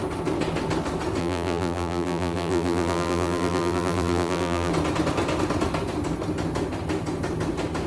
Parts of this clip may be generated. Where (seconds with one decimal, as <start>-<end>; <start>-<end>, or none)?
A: 1.2-4.7